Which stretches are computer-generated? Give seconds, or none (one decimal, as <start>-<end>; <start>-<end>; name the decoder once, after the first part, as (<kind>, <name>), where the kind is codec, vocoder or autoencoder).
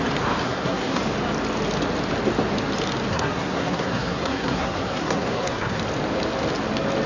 0.4-1.0 (codec, SNAC); 3.1-5.8